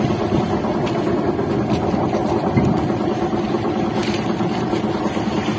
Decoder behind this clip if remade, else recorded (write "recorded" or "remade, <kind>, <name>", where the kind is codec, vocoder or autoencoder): recorded